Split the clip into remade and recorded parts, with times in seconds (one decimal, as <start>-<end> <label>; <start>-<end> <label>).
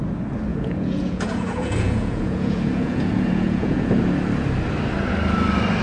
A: 0.0-0.5 recorded; 0.5-4.0 remade; 4.0-5.8 recorded